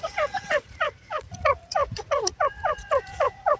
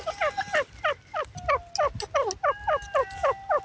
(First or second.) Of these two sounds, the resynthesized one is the first